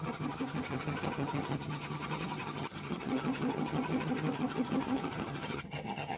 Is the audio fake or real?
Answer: fake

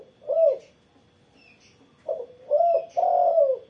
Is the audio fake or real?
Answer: real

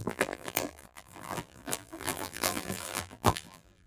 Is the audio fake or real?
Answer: fake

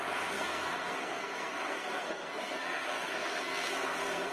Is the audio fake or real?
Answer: fake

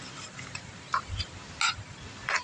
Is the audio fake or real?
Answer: real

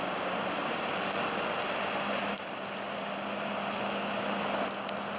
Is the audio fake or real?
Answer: real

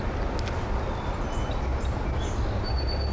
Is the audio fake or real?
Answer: real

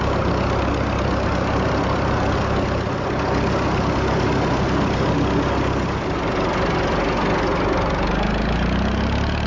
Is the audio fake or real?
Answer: real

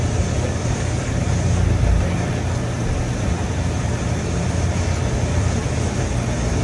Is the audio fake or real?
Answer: fake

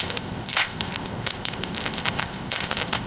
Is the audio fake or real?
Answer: fake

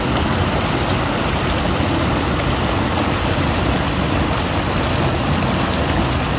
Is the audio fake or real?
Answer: real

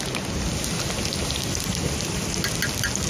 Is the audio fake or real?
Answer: real